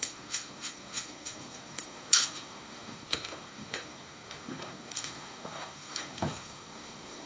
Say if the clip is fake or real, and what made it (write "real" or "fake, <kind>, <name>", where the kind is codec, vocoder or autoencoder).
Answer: fake, codec, SNAC